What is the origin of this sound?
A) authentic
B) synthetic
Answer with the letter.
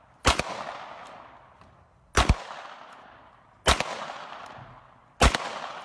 A